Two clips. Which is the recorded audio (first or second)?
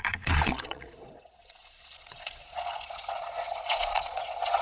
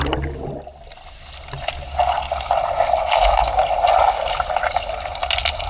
second